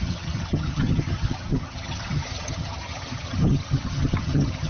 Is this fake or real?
fake